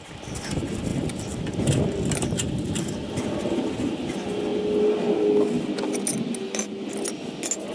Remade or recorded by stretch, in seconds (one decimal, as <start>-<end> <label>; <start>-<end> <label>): 0.0-0.9 recorded; 0.9-1.5 remade; 1.5-7.7 recorded